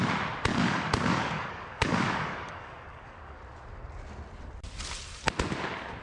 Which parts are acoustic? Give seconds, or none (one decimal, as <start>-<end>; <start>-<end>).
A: 0.0-0.5; 3.4-6.0